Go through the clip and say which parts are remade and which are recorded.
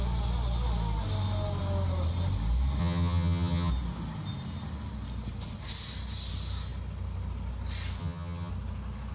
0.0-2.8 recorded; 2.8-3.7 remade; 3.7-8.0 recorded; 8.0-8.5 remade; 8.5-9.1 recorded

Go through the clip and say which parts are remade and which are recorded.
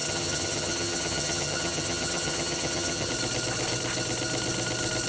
0.0-3.1 remade; 3.1-5.1 recorded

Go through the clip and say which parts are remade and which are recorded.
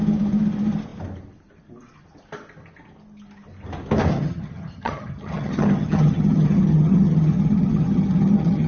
0.0-4.1 recorded; 4.1-8.7 remade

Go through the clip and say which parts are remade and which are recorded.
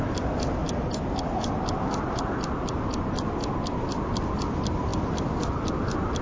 0.0-6.2 recorded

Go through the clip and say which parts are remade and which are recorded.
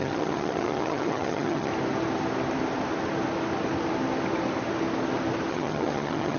0.0-1.7 remade; 1.7-5.5 recorded; 5.5-6.4 remade